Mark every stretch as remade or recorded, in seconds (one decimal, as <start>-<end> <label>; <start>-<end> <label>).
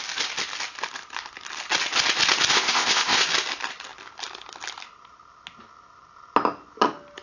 0.0-2.5 recorded; 2.5-3.3 remade; 3.3-7.2 recorded